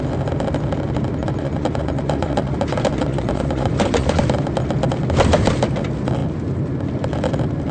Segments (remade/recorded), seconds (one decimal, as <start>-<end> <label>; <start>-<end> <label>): 0.0-1.2 recorded; 1.2-4.2 remade; 4.2-7.7 recorded